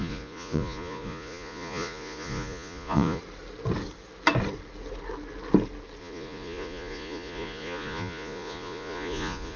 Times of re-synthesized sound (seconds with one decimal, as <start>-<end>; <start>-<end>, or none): 0.0-3.2; 6.0-9.6